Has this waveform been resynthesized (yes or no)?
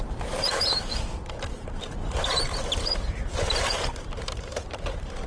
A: yes